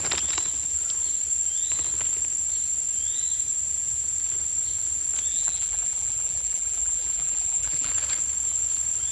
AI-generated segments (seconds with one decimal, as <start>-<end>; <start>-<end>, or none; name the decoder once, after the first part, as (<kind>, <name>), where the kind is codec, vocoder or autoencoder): 5.3-7.9 (vocoder, BigVGAN v2)